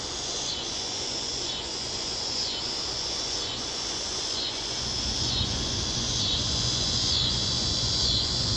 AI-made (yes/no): yes